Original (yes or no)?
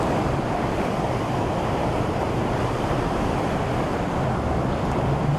no